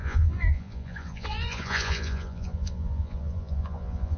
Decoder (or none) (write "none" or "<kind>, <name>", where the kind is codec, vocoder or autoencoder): vocoder, Vocos